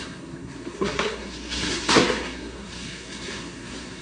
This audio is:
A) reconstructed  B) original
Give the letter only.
A